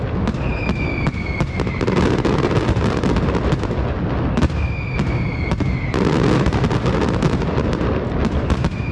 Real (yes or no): yes